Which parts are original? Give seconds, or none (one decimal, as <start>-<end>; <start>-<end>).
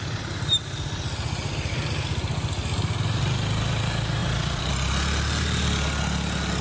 0.0-4.2; 4.7-6.6